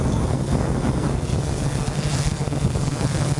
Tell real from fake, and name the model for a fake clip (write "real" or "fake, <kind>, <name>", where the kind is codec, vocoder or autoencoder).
fake, codec, SNAC